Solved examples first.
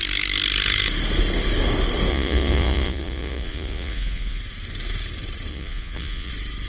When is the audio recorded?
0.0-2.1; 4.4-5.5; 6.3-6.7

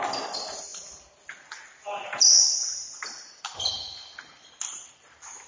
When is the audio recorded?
0.0-5.5

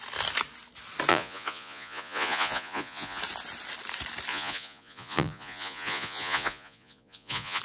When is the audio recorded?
0.0-1.1; 3.2-4.3

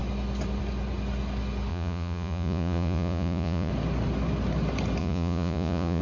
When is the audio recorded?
0.0-1.7; 3.7-5.0